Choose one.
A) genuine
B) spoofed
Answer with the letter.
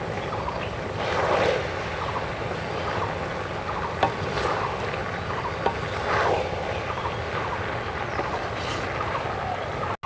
A